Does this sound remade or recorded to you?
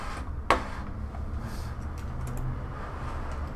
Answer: recorded